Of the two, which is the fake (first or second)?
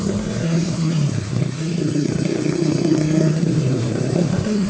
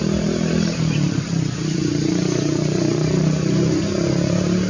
first